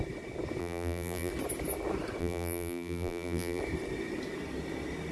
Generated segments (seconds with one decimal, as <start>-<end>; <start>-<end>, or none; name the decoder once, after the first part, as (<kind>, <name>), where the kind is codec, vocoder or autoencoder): 0.6-1.3 (vocoder, BigVGAN v2); 2.2-3.6